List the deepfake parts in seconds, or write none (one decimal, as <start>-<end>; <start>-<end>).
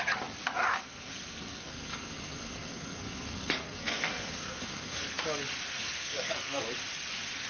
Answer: 0.7-5.2; 5.7-6.6